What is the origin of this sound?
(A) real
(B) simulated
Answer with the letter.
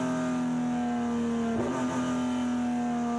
A